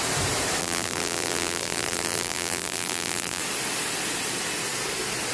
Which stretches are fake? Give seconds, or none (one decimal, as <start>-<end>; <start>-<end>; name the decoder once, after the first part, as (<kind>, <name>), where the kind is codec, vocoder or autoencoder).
0.6-3.4 (vocoder, BigVGAN v2)